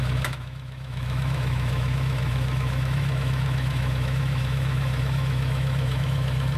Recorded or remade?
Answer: remade